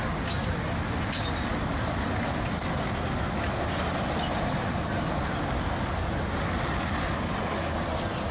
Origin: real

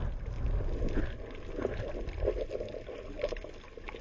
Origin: real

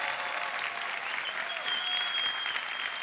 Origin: real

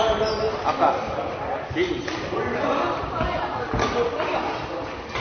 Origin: real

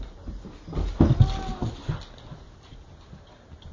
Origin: real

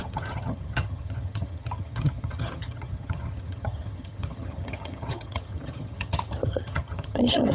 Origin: fake